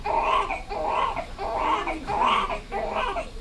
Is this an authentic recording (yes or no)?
yes